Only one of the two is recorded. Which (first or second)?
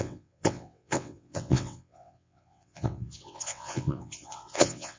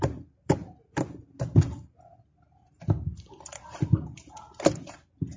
second